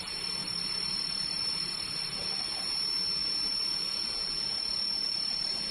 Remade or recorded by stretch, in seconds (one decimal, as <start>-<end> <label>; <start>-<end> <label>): 0.0-0.4 recorded; 0.4-1.7 remade; 1.7-5.7 recorded